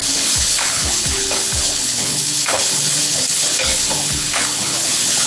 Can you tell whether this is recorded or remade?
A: remade